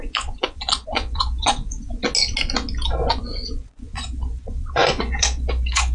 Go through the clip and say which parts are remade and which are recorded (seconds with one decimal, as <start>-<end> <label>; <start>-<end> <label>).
0.0-2.0 remade; 2.0-3.2 recorded; 3.2-5.9 remade